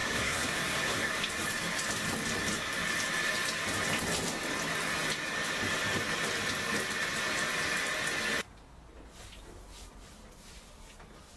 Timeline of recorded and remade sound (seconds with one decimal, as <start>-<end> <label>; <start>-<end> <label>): 0.0-1.1 remade; 1.1-11.4 recorded